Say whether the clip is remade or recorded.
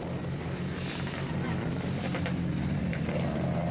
recorded